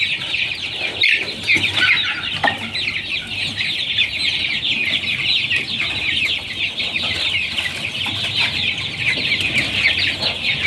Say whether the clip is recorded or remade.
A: recorded